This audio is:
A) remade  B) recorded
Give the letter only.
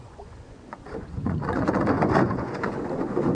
A